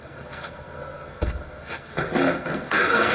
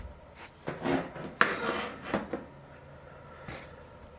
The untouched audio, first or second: second